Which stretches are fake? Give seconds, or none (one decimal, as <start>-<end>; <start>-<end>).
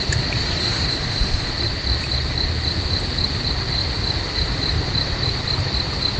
0.6-1.5